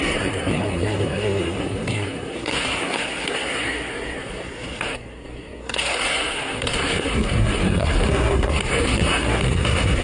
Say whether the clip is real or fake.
fake